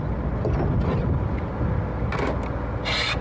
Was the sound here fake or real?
real